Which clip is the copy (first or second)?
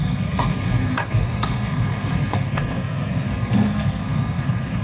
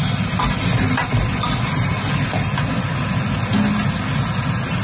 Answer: first